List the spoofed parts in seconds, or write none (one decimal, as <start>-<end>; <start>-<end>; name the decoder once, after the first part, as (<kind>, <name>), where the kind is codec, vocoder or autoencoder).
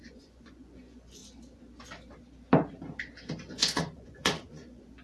0.0-1.2 (vocoder, Vocos); 3.5-5.0